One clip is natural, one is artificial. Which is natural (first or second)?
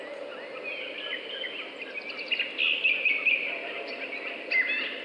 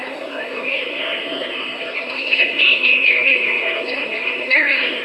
first